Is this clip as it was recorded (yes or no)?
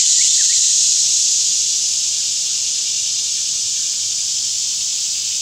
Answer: yes